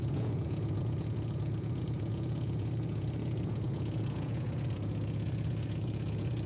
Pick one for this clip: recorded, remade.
remade